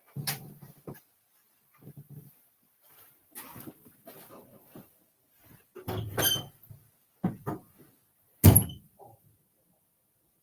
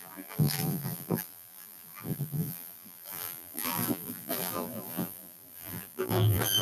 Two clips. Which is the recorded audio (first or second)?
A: first